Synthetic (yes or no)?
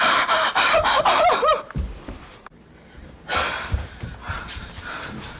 yes